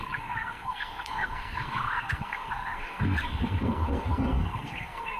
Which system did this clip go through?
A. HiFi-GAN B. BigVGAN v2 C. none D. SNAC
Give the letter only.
D